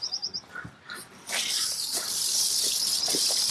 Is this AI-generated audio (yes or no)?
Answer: no